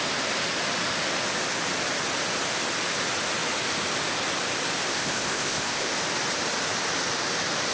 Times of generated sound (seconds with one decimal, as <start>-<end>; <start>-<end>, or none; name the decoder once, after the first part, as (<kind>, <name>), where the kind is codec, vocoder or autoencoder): 4.9-5.9 (codec, ZipCodec)